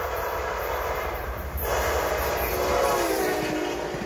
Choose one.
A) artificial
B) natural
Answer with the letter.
A